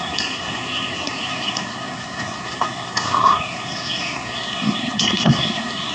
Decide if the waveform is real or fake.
fake